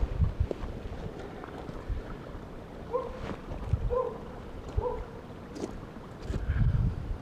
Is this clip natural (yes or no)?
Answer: no